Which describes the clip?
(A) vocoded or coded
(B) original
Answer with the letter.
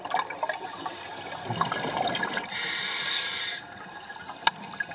B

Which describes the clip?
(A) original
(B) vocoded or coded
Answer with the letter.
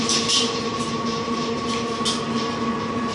A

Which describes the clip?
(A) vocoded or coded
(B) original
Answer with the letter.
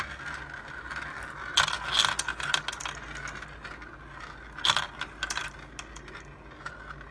B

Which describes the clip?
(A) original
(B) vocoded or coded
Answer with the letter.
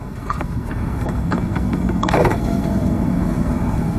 B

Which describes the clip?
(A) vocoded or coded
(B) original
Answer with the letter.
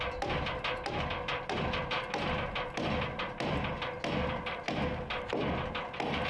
B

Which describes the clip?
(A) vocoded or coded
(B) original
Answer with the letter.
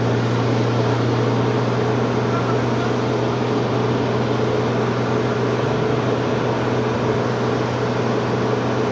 B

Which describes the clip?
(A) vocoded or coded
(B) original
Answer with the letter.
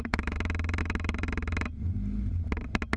A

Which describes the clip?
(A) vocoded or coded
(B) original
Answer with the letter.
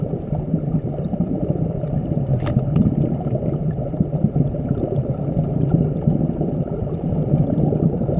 A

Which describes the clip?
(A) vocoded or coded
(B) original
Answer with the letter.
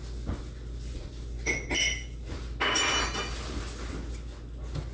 B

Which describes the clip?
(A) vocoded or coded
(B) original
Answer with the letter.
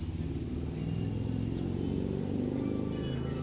B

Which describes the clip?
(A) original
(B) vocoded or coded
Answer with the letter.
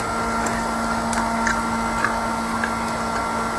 A